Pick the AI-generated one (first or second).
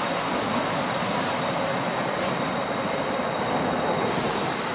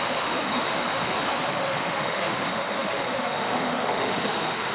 second